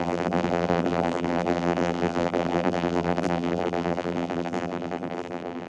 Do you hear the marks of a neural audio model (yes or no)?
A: yes